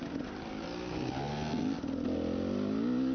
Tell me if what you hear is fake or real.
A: real